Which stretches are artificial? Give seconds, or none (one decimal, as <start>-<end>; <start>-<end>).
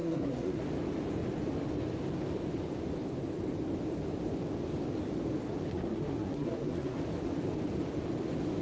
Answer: 0.0-0.6; 5.7-7.0